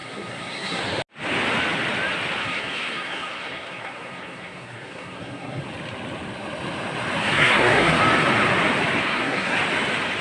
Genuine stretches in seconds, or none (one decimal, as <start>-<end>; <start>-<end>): 0.8-2.4; 5.6-7.2; 8.0-9.0; 9.6-10.2